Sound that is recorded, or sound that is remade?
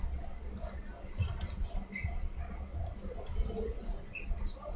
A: recorded